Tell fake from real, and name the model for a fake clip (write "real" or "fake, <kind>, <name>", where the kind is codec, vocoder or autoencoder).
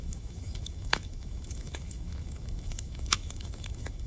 fake, autoencoder, DAC-VAE